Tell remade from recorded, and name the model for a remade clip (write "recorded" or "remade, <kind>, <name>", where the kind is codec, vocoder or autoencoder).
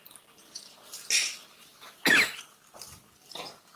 recorded